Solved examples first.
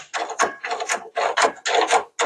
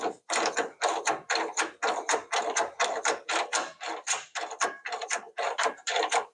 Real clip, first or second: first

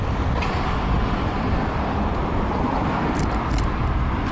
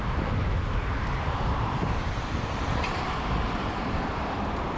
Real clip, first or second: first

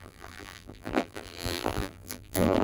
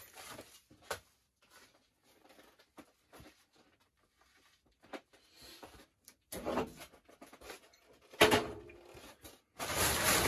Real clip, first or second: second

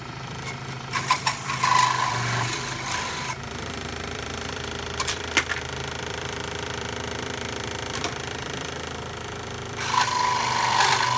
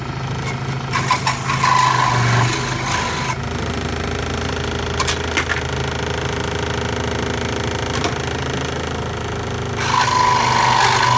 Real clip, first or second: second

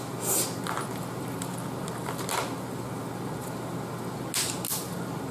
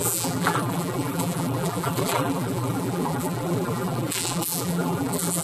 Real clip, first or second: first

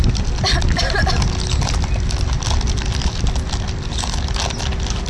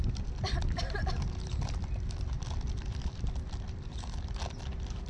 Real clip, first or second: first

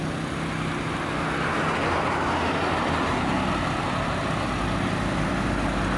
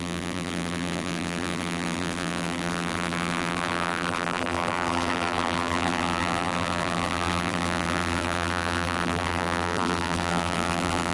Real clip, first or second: first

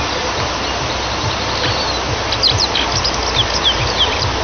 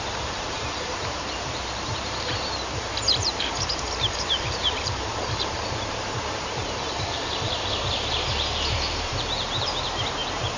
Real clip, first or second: first